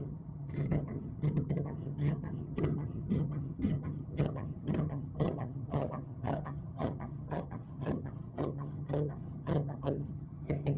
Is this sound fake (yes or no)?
yes